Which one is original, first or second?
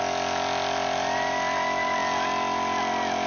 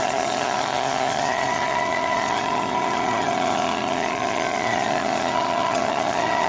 first